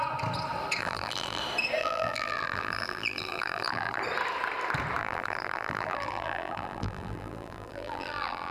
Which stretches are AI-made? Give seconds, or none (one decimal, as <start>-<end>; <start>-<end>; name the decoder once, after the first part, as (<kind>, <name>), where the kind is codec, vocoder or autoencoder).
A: 0.8-1.4 (vocoder, BigVGAN v2); 1.8-4.0; 5.0-8.5